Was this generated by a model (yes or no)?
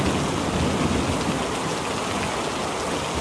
no